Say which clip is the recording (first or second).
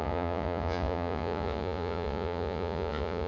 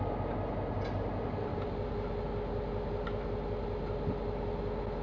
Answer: second